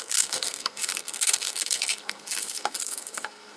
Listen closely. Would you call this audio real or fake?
fake